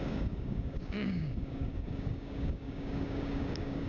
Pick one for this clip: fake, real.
fake